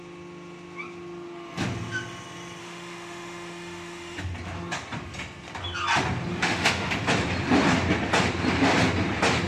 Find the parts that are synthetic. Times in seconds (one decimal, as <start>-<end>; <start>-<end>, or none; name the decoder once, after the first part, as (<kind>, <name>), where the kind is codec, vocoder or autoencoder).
2.6-4.2 (autoencoder, DAC-VAE); 6.3-6.9